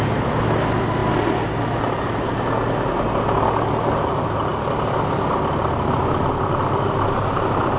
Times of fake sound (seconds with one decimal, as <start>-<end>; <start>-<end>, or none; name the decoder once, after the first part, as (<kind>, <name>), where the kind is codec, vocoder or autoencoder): none